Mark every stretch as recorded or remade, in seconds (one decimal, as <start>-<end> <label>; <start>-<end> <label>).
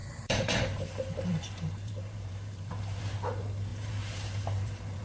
0.0-3.0 remade; 3.0-3.7 recorded; 3.7-5.0 remade